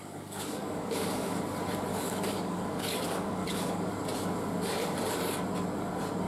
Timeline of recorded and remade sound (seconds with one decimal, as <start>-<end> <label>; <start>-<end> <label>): 0.0-1.4 remade; 1.4-1.9 recorded; 1.9-3.9 remade; 3.9-6.3 recorded